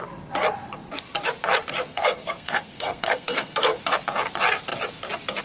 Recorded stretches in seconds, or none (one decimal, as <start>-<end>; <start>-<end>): 0.0-1.9; 3.8-5.4